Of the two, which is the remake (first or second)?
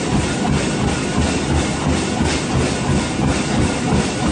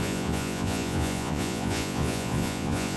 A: second